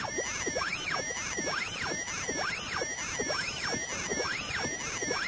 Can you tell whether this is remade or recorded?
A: recorded